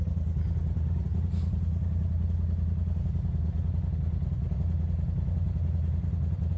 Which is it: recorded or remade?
recorded